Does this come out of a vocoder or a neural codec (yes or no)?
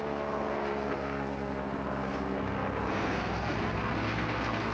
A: yes